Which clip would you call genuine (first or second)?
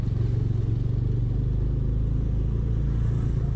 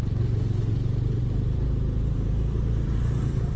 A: first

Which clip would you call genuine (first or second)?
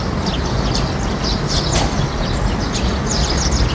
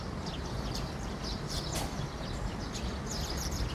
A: first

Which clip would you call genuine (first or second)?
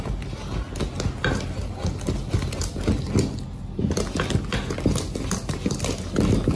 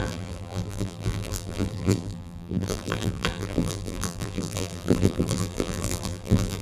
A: first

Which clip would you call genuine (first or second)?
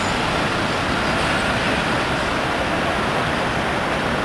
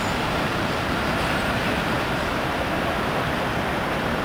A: first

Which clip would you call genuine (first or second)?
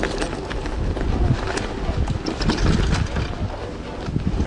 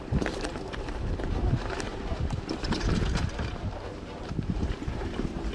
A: first